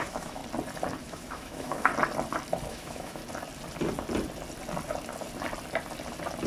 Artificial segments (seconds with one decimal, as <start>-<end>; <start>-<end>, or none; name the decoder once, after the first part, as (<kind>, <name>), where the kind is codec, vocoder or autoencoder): 0.0-0.4 (autoencoder, DAC-VAE); 1.0-1.9; 2.7-3.2